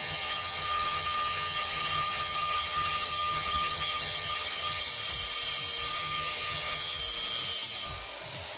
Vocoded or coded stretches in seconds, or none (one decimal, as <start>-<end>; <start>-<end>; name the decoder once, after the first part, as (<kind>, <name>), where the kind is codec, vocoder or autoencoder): 0.0-4.9 (vocoder, HiFi-GAN); 5.9-7.0